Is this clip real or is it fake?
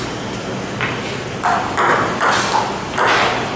real